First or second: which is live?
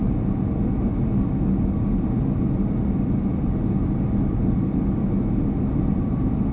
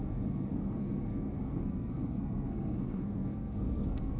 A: first